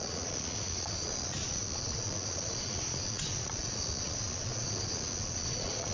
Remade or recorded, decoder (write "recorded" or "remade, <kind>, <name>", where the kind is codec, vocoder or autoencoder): remade, vocoder, Vocos